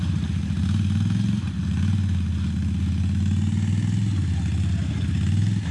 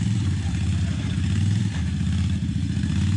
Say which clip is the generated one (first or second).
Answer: second